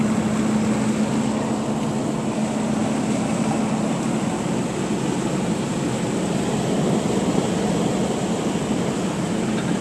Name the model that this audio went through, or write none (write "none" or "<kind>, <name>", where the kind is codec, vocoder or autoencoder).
none